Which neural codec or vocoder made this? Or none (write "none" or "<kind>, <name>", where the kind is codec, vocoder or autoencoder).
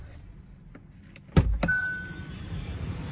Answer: vocoder, BigVGAN v2